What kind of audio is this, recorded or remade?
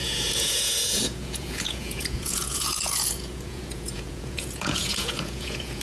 remade